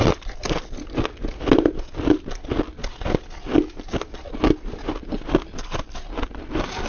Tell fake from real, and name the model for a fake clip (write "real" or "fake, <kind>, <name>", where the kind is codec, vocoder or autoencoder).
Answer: real